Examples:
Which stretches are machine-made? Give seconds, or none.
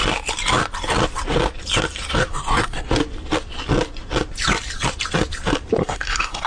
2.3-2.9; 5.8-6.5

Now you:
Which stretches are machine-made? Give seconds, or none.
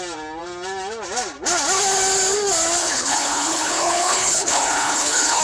2.8-5.4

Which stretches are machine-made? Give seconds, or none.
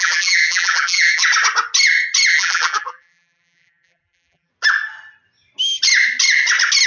0.0-1.2; 2.3-4.5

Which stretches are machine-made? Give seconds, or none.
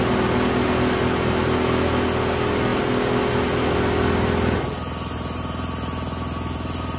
none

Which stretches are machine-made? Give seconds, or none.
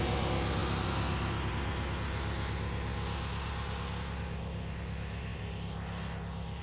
0.6-1.5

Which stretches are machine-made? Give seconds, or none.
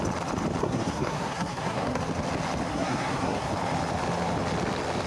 0.6-2.0; 2.7-3.5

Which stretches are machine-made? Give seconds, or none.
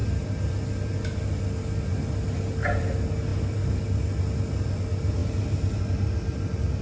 none